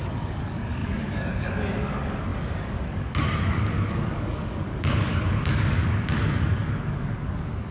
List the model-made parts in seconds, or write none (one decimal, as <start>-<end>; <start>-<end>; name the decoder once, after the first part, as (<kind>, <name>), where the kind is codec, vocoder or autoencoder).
0.0-7.7 (codec, DAC)